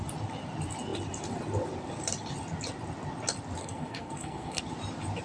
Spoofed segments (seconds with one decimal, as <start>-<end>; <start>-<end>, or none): 3.6-4.6